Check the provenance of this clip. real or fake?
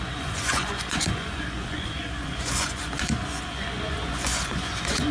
fake